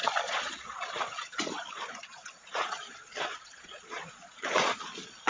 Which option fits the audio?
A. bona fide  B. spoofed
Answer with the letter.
B